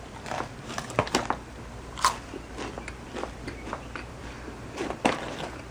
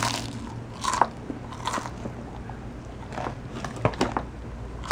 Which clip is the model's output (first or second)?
first